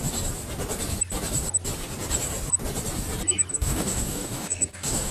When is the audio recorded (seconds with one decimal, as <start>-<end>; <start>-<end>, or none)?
0.0-3.5